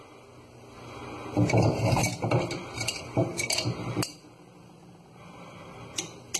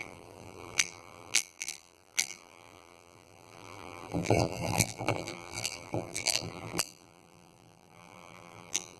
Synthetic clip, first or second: second